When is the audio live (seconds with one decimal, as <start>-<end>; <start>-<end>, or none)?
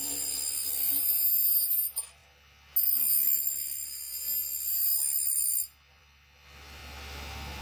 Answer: 2.2-5.9; 6.8-7.6